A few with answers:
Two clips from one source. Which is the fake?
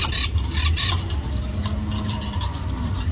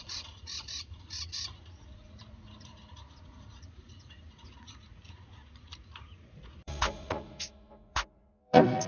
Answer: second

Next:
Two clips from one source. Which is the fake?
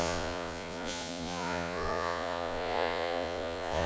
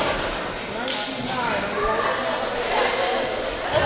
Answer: first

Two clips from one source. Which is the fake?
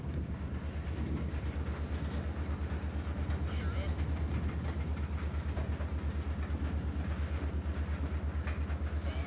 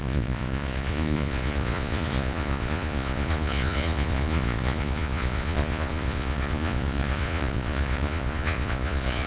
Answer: second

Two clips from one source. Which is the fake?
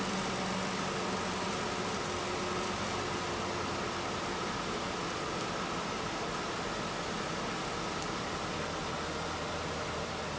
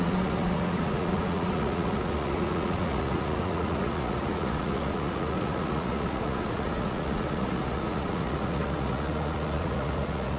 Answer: second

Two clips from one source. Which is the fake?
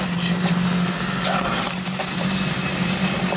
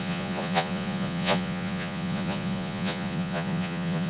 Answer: second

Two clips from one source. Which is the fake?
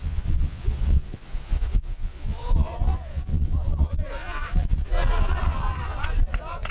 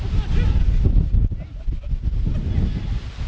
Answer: first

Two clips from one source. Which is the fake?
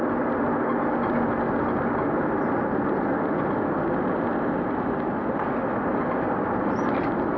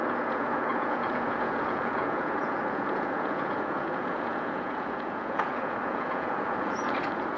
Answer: second